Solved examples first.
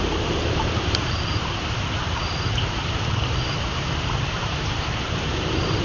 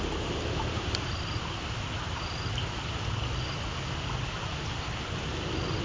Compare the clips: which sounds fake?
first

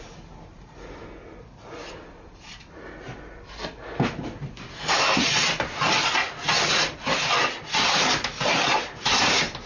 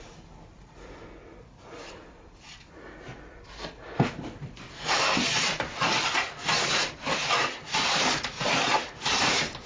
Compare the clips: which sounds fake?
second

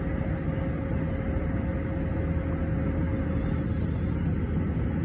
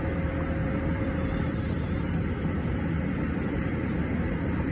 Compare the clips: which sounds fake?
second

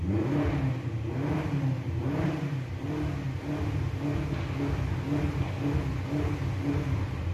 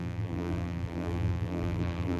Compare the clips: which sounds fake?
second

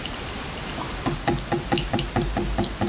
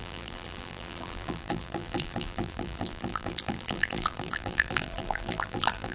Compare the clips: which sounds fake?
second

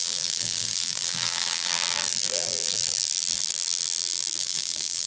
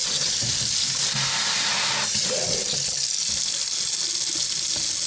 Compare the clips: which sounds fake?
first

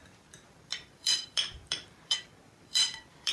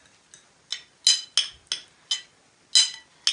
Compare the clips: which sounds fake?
first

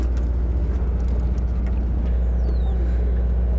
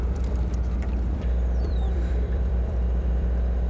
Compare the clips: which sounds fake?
second